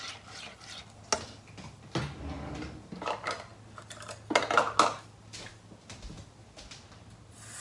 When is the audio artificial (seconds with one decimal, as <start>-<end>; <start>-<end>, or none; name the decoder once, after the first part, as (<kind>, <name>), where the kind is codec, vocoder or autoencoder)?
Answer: none